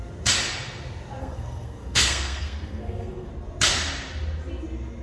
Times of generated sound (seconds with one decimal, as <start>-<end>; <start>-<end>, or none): 1.2-3.3

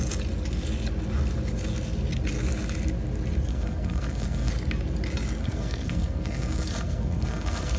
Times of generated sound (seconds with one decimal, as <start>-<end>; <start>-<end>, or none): 3.5-4.5; 5.4-7.8

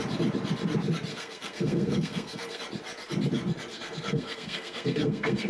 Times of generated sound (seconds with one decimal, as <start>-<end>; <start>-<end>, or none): 1.1-2.6; 3.7-5.5

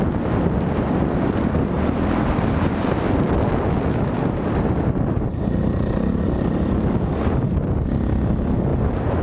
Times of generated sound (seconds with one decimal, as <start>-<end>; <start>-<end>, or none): none

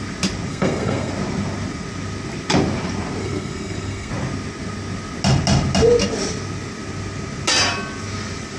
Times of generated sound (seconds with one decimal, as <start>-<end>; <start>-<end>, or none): 0.5-1.1; 3.2-4.1

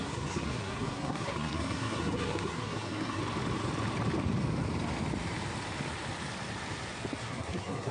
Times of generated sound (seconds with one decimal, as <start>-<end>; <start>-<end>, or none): 0.0-3.2; 7.2-7.9